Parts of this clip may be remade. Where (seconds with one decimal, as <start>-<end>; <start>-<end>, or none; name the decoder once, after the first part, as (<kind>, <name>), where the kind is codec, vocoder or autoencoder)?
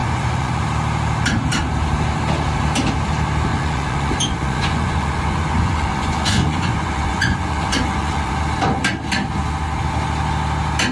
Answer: 0.0-0.6 (vocoder, Vocos); 3.5-8.3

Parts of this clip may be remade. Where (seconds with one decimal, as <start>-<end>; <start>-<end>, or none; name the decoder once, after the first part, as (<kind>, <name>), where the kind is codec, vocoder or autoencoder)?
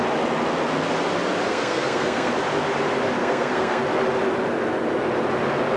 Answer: 1.5-2.3 (codec, SNAC); 3.2-3.8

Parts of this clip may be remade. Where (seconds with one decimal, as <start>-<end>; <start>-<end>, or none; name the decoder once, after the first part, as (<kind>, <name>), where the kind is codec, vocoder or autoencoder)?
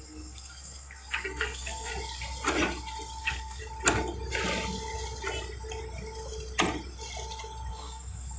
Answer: 0.0-1.9 (codec, SNAC); 3.2-3.6; 7.7-8.4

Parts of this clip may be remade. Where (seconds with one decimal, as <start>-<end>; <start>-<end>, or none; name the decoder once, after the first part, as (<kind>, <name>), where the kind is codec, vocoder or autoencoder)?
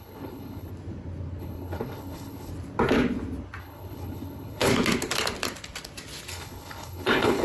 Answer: 0.0-0.7 (codec, HILCodec); 1.4-2.5; 3.6-4.7; 6.3-7.4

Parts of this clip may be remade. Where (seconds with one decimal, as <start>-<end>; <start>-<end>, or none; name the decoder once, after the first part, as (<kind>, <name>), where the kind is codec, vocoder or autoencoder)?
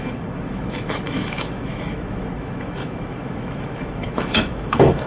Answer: 0.0-5.1 (autoencoder, DAC-VAE)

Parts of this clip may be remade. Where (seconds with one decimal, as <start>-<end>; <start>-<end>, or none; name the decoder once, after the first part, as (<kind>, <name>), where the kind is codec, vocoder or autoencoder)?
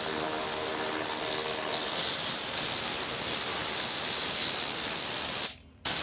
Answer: none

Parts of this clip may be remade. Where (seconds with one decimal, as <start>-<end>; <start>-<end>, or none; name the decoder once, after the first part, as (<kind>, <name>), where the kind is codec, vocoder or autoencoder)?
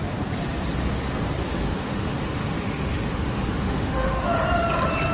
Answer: 1.5-4.3 (autoencoder, DAC-VAE)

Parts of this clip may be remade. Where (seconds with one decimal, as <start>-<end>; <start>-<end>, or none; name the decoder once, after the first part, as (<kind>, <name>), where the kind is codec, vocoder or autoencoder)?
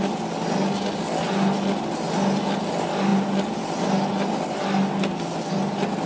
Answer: none